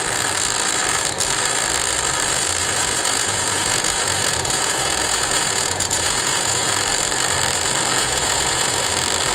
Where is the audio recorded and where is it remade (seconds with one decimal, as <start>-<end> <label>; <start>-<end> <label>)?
0.0-2.6 recorded; 2.6-6.7 remade; 6.7-8.0 recorded; 8.0-8.9 remade; 8.9-9.3 recorded